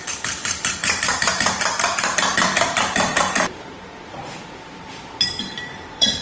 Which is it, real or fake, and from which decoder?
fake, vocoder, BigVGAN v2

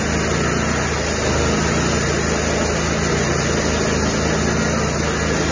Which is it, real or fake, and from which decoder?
real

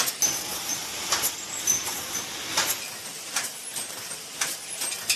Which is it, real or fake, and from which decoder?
real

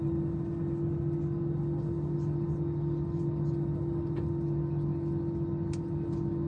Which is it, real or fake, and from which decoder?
real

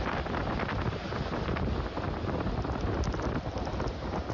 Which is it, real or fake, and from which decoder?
real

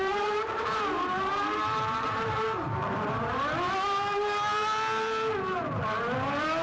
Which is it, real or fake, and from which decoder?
fake, vocoder, BigVGAN v2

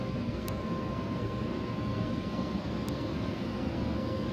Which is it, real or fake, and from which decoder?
fake, codec, SNAC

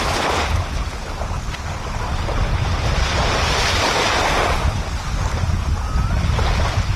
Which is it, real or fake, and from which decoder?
real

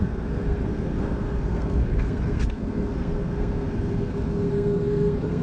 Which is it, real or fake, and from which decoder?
fake, codec, SNAC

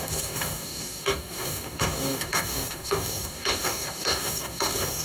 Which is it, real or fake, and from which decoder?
fake, codec, DAC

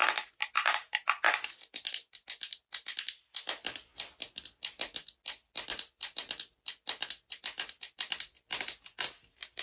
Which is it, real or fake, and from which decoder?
real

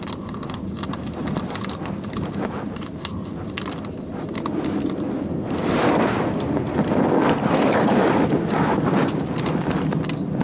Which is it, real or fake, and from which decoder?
real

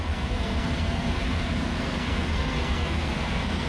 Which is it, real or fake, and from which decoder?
fake, codec, SNAC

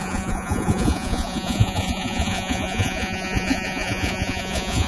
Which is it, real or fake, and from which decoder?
fake, vocoder, Vocos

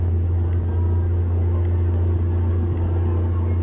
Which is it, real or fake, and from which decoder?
real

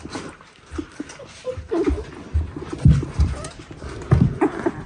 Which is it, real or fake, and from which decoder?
real